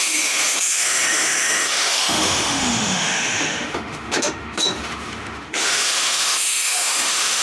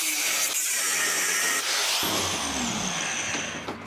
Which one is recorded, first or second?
second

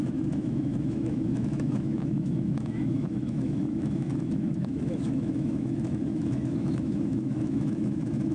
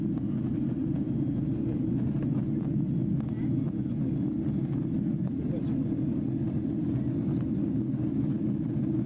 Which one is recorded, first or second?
second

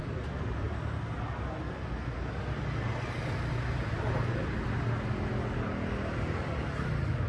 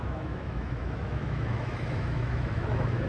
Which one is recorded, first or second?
first